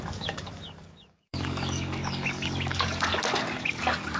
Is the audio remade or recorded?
remade